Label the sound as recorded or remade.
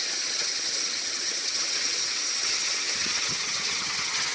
remade